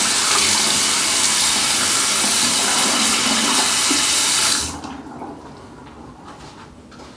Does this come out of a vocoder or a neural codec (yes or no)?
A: no